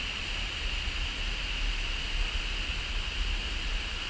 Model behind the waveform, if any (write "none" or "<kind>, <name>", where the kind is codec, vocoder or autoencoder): none